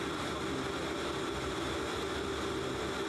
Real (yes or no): yes